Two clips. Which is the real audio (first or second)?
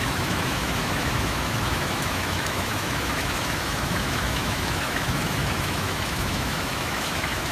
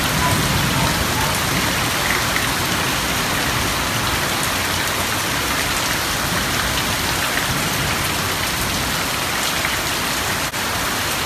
second